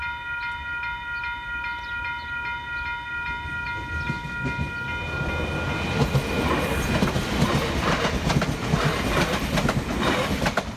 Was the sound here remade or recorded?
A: recorded